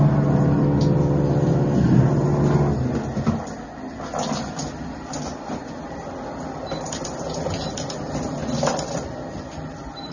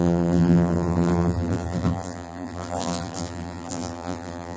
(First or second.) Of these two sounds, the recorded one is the first